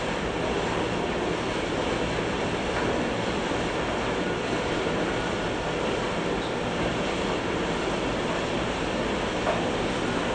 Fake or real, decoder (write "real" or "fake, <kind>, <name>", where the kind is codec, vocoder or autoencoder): real